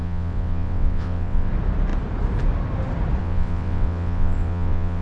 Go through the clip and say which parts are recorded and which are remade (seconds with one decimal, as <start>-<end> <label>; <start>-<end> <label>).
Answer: 0.0-1.5 remade; 1.5-3.2 recorded; 3.2-5.0 remade